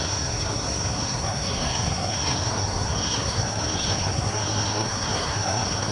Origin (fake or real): fake